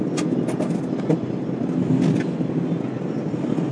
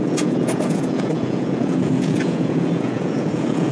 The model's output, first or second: second